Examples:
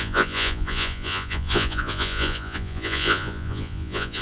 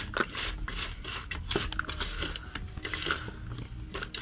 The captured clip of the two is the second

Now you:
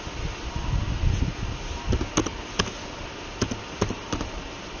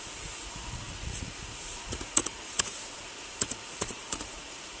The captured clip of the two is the first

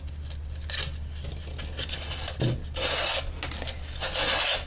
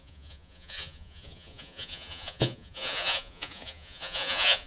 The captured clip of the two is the first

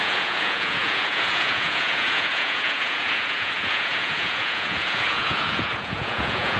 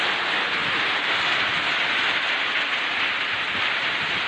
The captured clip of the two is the second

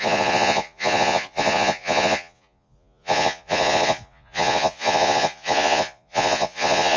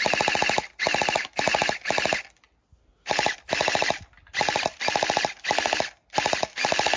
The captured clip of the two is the second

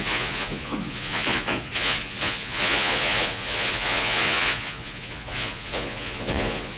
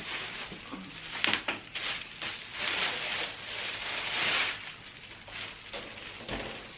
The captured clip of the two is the second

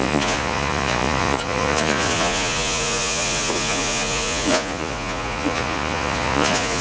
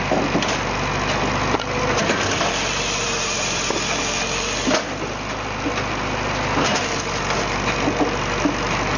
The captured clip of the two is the second